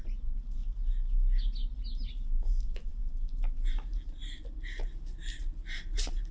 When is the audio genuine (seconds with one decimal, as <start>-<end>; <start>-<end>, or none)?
0.6-2.1